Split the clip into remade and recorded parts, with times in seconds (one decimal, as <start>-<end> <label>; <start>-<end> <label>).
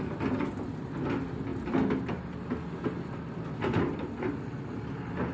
0.0-5.3 recorded